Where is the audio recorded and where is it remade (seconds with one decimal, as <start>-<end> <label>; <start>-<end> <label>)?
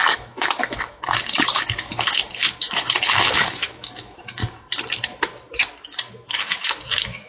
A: 0.0-4.4 remade; 4.4-6.1 recorded; 6.1-7.3 remade